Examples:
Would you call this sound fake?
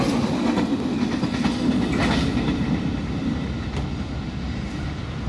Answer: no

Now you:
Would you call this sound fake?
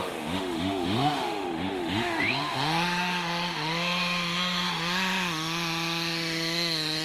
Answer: yes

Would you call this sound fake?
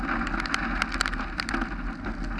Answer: no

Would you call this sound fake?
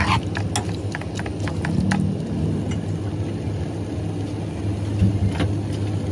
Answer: no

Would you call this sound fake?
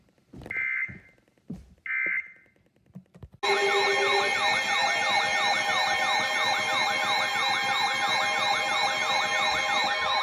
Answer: no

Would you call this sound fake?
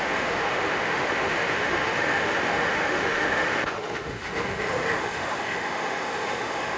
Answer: yes